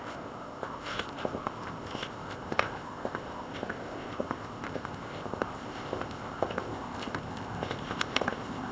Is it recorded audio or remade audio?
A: remade